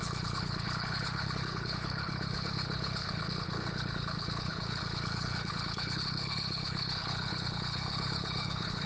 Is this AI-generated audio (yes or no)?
yes